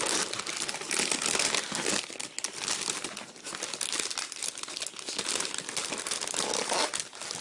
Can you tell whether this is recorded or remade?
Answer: recorded